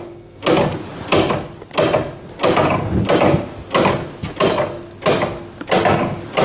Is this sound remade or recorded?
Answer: recorded